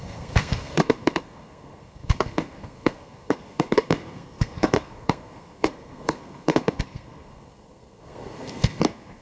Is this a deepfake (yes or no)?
yes